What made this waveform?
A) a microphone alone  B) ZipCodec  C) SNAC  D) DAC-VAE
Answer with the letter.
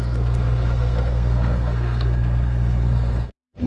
C